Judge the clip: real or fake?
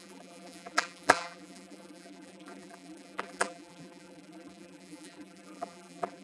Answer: fake